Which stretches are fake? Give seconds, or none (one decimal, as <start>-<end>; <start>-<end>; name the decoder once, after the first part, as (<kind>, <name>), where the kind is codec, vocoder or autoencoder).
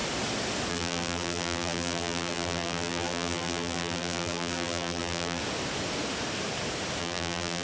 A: 0.7-5.4 (vocoder, BigVGAN v2); 7.0-7.6